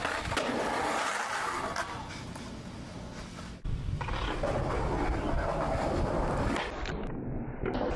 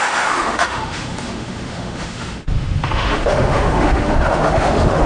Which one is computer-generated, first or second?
second